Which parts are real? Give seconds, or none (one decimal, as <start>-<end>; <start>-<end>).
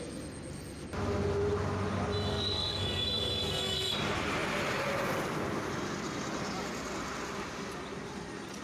0.0-2.3; 3.9-8.6